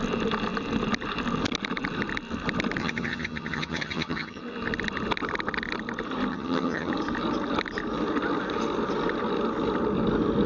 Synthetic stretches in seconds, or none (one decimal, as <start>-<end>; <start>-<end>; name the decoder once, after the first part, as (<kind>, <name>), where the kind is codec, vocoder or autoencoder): 2.8-4.4 (vocoder, HiFi-GAN); 6.3-6.9